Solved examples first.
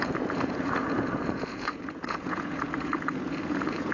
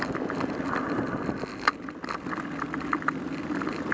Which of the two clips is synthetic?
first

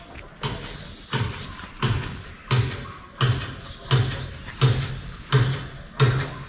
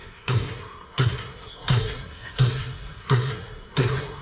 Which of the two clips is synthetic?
second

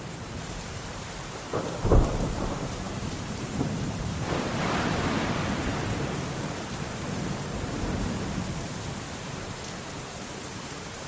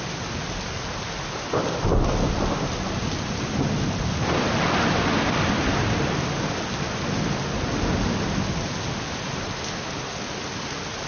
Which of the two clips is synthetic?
first